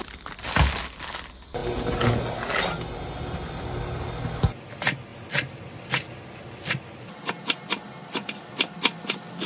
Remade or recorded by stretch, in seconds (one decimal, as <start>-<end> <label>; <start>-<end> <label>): 0.0-8.0 recorded; 8.0-8.5 remade; 8.5-9.5 recorded